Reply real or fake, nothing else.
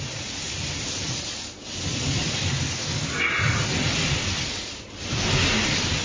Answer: real